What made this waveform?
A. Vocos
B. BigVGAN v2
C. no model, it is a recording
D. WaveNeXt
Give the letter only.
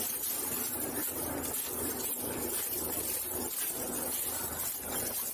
B